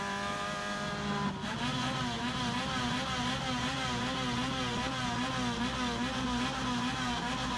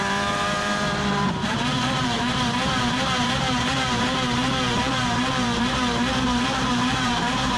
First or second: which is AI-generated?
second